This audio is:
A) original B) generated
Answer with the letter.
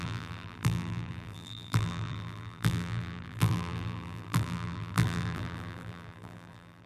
B